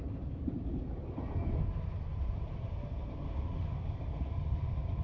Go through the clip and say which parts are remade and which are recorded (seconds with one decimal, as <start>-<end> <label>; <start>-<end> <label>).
0.0-2.1 recorded; 2.1-2.7 remade; 2.7-5.0 recorded